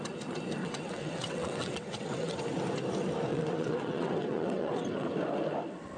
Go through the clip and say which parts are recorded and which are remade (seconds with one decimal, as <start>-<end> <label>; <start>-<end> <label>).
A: 0.0-0.6 recorded; 0.6-2.4 remade; 2.4-3.3 recorded; 3.3-5.1 remade; 5.1-6.0 recorded